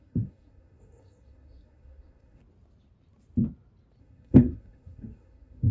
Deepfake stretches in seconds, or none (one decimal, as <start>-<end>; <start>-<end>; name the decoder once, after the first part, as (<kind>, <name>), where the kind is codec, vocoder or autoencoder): 0.0-2.4 (codec, SNAC); 4.0-5.7